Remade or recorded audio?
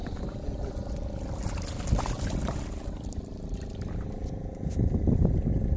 recorded